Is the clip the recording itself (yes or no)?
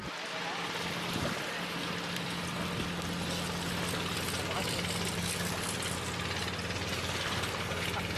yes